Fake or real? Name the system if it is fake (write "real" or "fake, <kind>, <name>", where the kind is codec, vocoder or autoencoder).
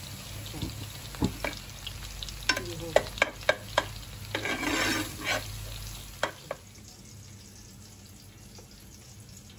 real